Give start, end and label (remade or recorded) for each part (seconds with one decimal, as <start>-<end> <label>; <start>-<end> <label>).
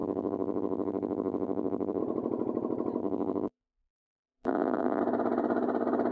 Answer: 0.0-2.0 remade; 2.0-3.0 recorded; 3.0-5.0 remade; 5.0-6.1 recorded